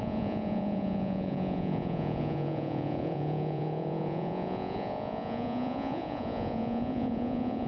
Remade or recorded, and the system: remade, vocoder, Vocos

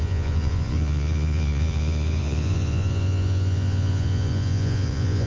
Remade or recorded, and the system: remade, vocoder, Vocos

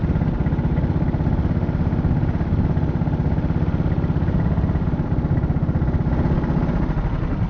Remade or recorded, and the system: recorded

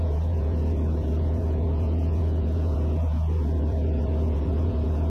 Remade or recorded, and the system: remade, vocoder, Vocos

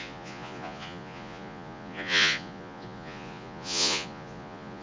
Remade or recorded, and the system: remade, vocoder, Vocos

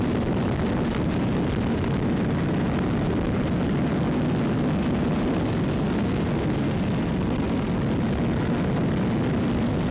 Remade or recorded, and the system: recorded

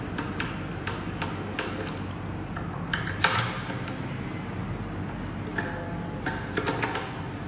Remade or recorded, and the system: recorded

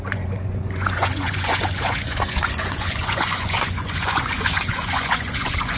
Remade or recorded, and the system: remade, vocoder, Vocos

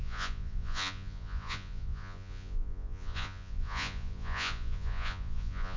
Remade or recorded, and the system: remade, vocoder, Vocos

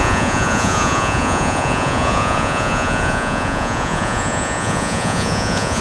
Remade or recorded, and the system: remade, vocoder, Vocos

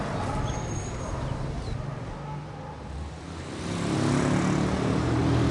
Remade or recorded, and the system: recorded